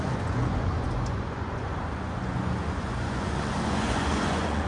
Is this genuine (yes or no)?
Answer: no